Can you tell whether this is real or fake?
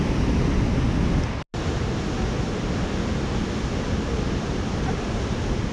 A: real